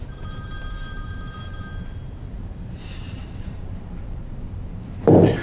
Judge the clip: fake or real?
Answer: fake